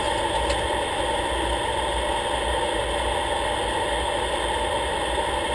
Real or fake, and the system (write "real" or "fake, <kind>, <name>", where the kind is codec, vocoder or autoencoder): real